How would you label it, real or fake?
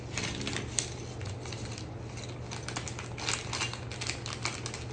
real